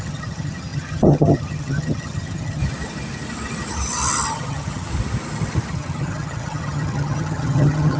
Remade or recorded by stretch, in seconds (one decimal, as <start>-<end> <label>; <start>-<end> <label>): 0.0-2.6 remade; 2.6-4.3 recorded; 4.3-4.9 remade; 4.9-5.7 recorded; 5.7-8.0 remade